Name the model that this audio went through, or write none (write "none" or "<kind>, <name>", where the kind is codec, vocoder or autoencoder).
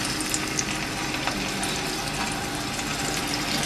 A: none